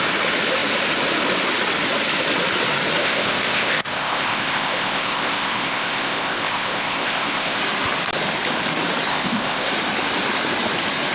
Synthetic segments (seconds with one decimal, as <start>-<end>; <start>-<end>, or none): 3.0-7.6; 9.1-9.7